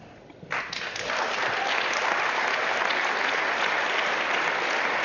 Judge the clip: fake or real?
real